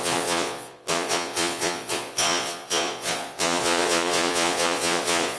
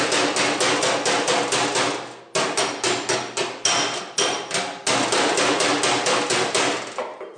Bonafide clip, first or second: second